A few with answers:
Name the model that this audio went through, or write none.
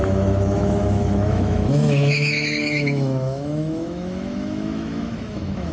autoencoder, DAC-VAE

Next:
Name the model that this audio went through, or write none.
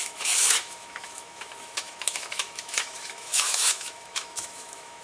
autoencoder, DAC-VAE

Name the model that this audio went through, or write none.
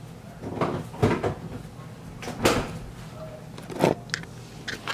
none